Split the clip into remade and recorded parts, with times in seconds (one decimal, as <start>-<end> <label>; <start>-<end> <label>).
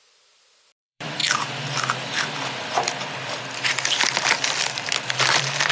0.0-1.2 remade; 1.2-4.6 recorded; 4.6-5.7 remade